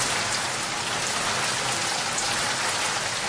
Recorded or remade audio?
recorded